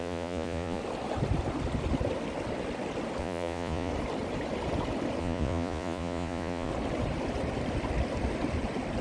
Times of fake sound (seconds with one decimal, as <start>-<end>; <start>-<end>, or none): 0.0-0.8; 3.2-3.9; 5.2-6.7